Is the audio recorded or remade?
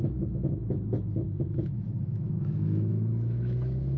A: remade